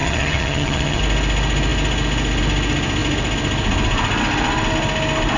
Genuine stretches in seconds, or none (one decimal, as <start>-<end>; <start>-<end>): 1.0-5.4